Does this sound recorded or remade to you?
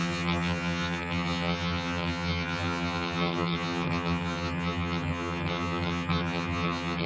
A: remade